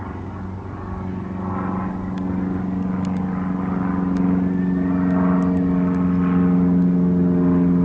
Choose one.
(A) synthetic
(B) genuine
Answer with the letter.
B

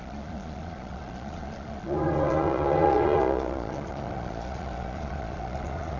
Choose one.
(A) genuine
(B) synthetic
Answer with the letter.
B